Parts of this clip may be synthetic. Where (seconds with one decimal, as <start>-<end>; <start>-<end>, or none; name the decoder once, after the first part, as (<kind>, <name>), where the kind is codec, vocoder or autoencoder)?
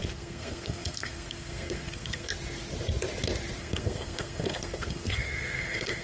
0.0-2.3 (codec, SNAC); 3.6-6.0